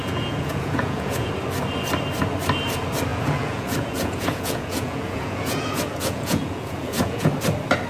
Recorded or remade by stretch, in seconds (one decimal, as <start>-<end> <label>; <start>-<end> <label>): 0.0-1.3 remade; 1.3-3.1 recorded; 3.1-7.3 remade; 7.3-7.9 recorded